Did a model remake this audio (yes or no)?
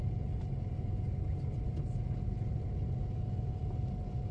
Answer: no